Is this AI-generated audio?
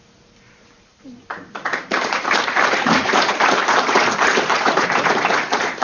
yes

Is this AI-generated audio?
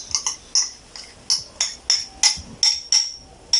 no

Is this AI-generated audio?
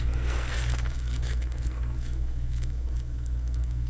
yes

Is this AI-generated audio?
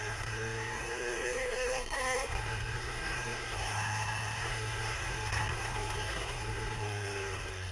yes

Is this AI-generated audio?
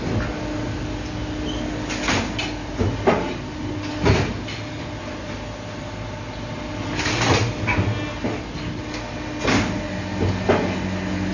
no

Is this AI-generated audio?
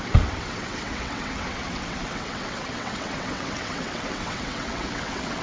yes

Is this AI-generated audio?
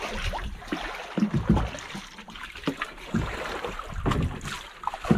no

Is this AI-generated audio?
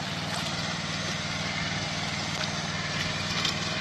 no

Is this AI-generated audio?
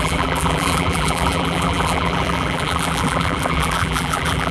yes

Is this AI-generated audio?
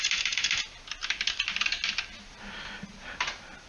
no